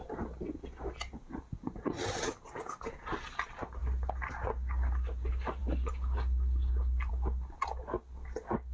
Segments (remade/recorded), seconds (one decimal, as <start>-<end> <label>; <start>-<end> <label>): 0.0-3.8 recorded; 3.8-4.3 remade; 4.3-8.7 recorded